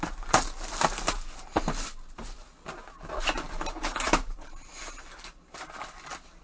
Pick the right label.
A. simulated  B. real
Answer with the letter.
B